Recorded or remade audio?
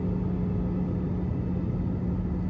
recorded